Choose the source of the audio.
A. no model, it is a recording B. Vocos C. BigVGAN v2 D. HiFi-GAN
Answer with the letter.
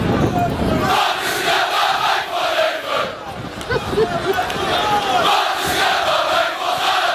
A